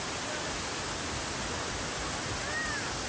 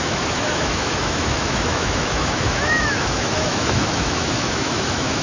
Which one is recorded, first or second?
first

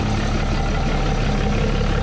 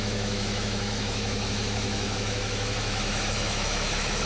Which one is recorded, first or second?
first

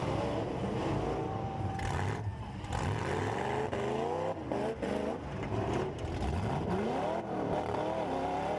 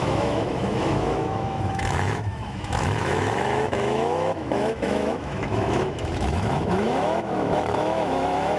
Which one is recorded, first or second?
first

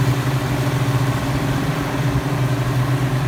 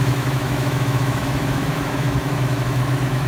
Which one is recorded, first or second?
first